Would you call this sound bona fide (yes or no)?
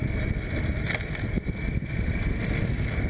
yes